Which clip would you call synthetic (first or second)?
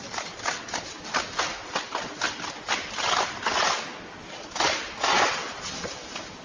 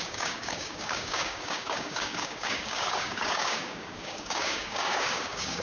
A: second